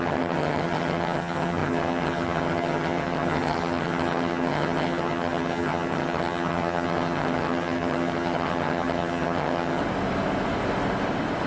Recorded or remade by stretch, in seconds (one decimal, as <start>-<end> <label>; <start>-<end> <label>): 0.0-9.8 remade; 9.8-11.5 recorded

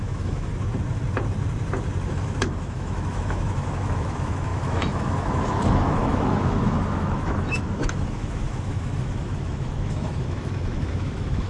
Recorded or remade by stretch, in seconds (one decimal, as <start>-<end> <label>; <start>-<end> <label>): 0.0-0.5 remade; 0.5-2.1 recorded; 2.1-11.5 remade

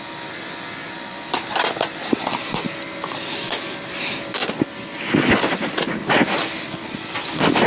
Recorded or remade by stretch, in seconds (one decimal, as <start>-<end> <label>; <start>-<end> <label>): 0.0-4.4 remade; 4.4-6.1 recorded; 6.1-7.7 remade